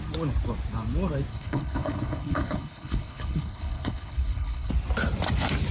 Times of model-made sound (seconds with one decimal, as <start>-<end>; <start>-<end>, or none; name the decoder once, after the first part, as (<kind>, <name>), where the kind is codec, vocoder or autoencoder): 1.3-4.7 (codec, HILCodec)